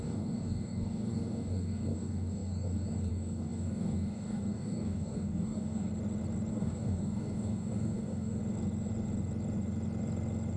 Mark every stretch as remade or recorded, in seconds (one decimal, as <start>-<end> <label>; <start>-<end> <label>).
0.0-5.9 remade; 5.9-6.5 recorded; 6.5-8.4 remade; 8.4-10.6 recorded